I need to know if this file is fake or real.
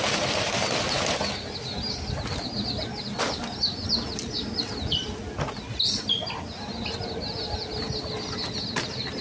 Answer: real